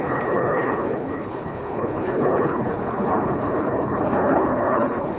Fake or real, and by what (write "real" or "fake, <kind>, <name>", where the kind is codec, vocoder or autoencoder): fake, codec, HILCodec